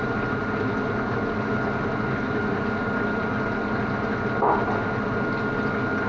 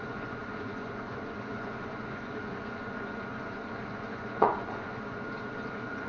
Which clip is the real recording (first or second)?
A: first